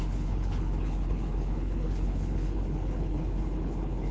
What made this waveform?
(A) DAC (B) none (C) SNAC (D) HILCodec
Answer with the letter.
D